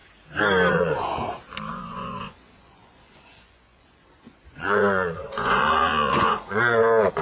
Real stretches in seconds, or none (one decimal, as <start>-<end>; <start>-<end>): 0.0-0.7; 1.2-1.7